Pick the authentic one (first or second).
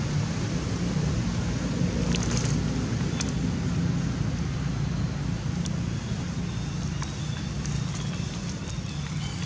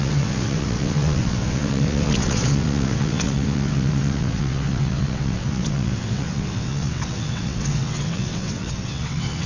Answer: first